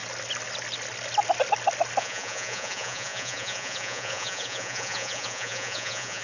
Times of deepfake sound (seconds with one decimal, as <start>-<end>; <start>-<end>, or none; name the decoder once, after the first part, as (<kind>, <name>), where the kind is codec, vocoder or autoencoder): 2.0-6.2 (vocoder, Vocos)